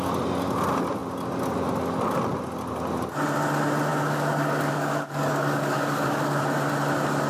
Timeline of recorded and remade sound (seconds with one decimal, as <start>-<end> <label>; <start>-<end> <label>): 0.0-3.9 recorded; 3.9-6.4 remade; 6.4-7.3 recorded

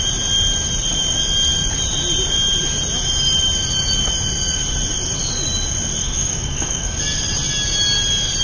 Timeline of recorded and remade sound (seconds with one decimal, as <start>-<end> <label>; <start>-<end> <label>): 0.0-6.0 recorded; 6.0-7.0 remade; 7.0-8.4 recorded

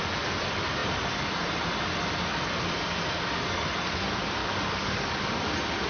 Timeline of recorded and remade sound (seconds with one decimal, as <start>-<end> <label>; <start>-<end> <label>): 0.0-4.4 recorded; 4.4-5.5 remade; 5.5-5.9 recorded